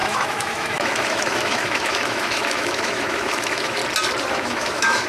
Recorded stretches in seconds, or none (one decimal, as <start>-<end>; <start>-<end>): 3.8-4.3